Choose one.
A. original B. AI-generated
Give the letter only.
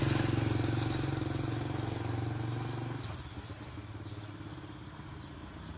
A